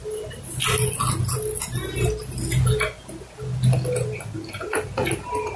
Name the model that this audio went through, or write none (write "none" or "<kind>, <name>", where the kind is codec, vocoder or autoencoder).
none